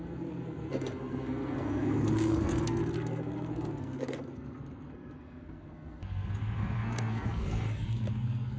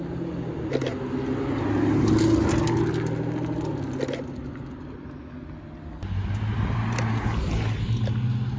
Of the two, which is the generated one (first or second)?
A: first